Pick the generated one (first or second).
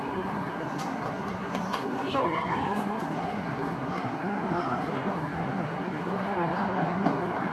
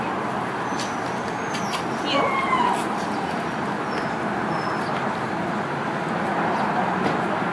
first